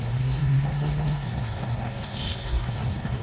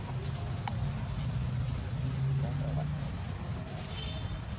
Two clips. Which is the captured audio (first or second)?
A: second